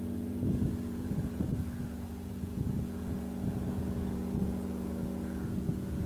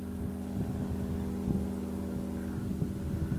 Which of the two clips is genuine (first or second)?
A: second